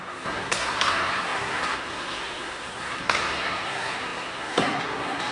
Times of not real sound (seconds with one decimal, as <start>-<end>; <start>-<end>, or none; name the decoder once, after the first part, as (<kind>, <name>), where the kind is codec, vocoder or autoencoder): 0.0-5.3 (codec, SNAC)